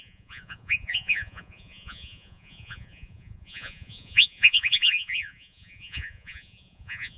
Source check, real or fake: fake